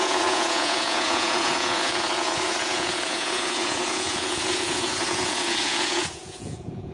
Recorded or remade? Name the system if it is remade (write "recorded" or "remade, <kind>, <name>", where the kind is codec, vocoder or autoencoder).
remade, vocoder, Vocos